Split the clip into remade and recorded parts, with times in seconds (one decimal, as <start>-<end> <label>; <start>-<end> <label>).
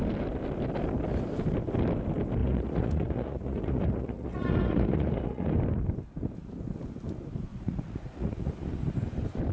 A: 0.0-2.4 recorded; 2.4-5.5 remade; 5.5-7.5 recorded; 7.5-8.5 remade; 8.5-9.5 recorded